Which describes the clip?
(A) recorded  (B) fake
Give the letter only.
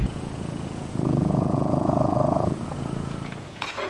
B